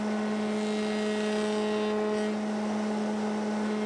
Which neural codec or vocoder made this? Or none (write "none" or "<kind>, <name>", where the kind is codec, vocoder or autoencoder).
none